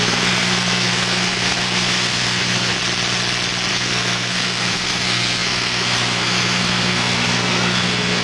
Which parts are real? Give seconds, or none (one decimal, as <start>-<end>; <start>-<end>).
2.8-3.7